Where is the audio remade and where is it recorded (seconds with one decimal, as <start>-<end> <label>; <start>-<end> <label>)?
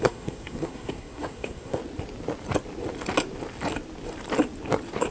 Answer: 0.0-1.8 remade; 1.8-5.1 recorded